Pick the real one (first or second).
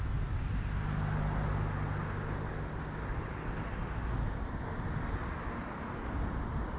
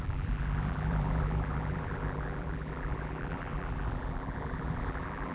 first